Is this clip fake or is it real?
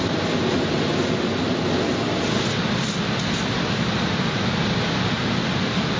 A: real